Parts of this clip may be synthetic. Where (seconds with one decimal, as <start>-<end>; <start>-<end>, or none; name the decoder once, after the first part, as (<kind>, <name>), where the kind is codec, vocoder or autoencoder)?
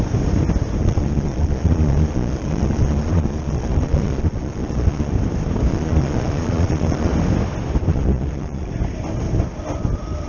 0.8-5.1 (vocoder, Vocos); 5.7-7.1; 7.9-8.7